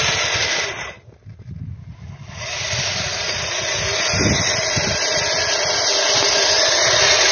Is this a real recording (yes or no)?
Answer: yes